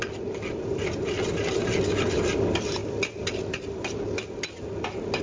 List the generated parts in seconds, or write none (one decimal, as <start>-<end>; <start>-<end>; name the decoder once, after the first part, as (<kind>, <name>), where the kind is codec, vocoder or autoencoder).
none